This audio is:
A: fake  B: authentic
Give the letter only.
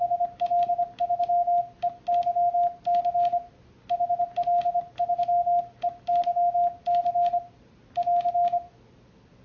B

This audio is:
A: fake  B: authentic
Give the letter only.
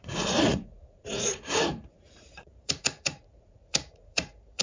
A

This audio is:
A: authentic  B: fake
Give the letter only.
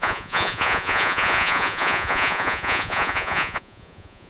B